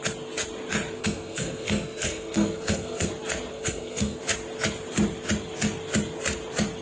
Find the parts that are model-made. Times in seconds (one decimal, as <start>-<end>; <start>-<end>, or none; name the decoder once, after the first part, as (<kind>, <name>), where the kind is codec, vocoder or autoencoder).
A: 1.0-3.1 (codec, SNAC); 3.5-4.2